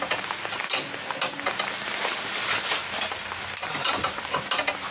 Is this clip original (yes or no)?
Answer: yes